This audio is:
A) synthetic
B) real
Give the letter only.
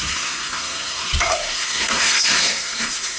A